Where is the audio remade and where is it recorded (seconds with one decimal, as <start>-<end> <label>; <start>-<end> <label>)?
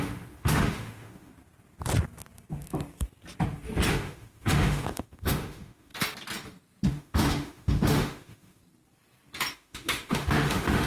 0.0-1.3 remade; 1.3-3.9 recorded; 3.9-5.9 remade; 5.9-6.9 recorded; 6.9-8.6 remade; 8.6-9.5 recorded; 9.5-10.9 remade